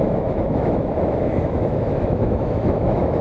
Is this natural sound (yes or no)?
no